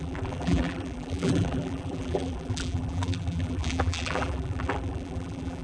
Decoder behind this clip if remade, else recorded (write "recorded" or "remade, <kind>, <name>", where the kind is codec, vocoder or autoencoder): remade, vocoder, BigVGAN v2